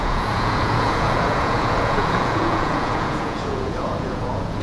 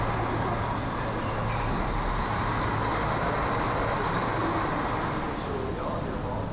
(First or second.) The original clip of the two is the second